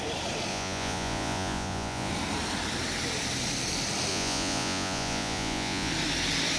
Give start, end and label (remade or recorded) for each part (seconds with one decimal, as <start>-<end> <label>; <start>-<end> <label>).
0.0-0.5 recorded; 0.5-2.1 remade; 2.1-4.1 recorded; 4.1-5.9 remade; 5.9-6.6 recorded